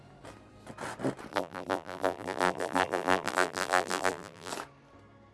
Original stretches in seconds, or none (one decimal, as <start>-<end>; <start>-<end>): 0.0-1.3; 4.5-5.3